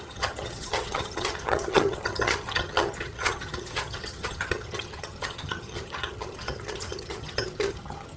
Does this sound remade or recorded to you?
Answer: remade